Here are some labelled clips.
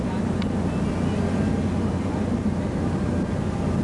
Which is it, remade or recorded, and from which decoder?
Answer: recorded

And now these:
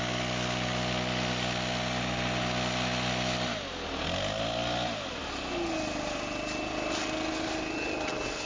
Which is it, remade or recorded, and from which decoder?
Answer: recorded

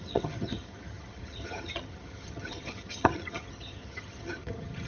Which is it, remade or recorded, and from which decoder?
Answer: remade, vocoder, HiFi-GAN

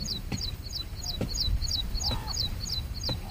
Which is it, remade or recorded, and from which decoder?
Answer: remade, vocoder, BigVGAN v2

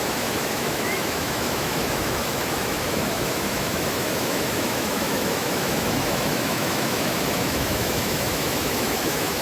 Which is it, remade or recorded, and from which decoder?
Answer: remade, autoencoder, DAC-VAE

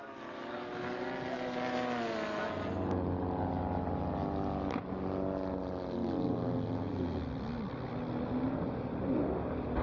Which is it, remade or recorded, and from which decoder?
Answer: recorded